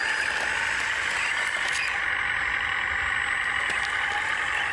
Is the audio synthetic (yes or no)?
no